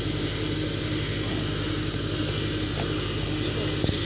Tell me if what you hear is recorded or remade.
recorded